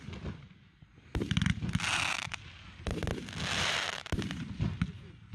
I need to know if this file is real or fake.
real